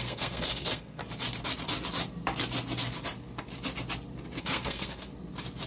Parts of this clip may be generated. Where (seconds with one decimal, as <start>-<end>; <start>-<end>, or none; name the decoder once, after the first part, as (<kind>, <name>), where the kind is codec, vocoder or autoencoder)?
0.0-1.0 (codec, SNAC); 4.4-5.1